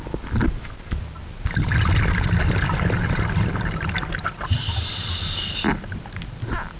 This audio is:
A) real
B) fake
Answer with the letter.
A